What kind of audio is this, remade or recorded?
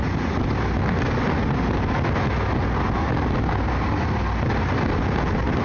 recorded